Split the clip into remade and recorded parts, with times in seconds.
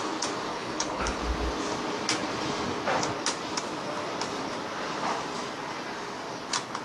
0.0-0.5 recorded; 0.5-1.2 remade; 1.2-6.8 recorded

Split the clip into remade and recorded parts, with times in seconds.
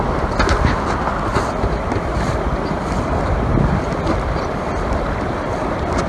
0.0-6.1 recorded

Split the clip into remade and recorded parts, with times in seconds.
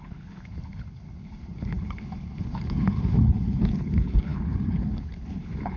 0.0-5.8 remade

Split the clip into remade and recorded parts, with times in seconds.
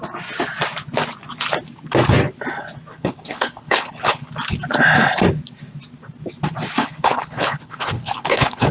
0.0-2.9 recorded; 2.9-4.3 remade; 4.3-6.8 recorded; 6.8-8.7 remade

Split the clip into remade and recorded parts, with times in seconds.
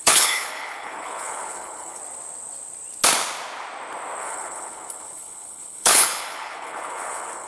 0.0-2.0 remade; 2.0-4.2 recorded; 4.2-7.5 remade